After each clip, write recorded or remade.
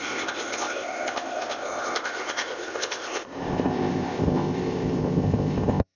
remade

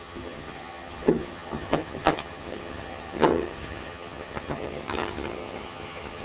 remade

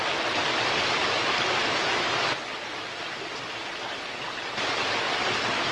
recorded